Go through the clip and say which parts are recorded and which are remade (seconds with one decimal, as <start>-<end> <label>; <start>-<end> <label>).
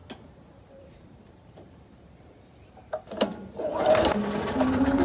0.0-0.6 recorded; 0.6-5.0 remade